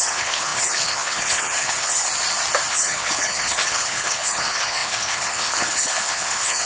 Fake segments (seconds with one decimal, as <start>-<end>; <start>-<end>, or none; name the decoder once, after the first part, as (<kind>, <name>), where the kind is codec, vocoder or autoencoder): 0.0-2.1 (codec, HILCodec); 2.7-6.7